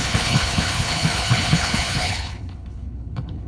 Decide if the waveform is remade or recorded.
remade